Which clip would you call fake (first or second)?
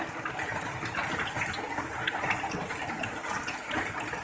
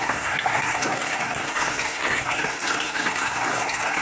second